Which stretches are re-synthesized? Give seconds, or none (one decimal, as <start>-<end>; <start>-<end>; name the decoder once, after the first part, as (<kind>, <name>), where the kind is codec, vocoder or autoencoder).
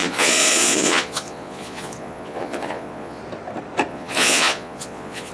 0.0-3.2 (vocoder, Vocos); 3.9-5.3